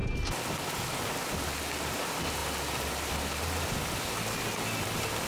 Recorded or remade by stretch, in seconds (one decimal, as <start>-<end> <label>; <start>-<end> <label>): 0.0-2.4 recorded; 2.4-3.1 remade; 3.1-5.3 recorded